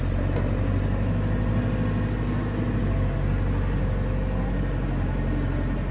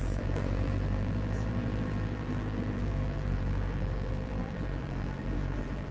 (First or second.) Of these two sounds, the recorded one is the first